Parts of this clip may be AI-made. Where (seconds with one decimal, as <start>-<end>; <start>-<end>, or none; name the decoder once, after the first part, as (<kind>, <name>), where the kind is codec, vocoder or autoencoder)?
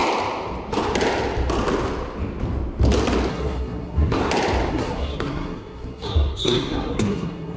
3.3-4.2 (codec, SNAC); 4.7-7.6